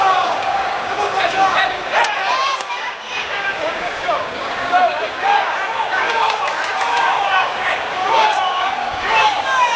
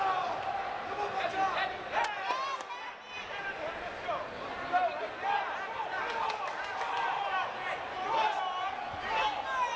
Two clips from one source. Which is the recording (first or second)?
second